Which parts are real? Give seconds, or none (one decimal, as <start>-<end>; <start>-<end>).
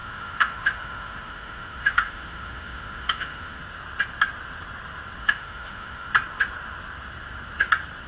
3.6-5.2; 6.1-8.1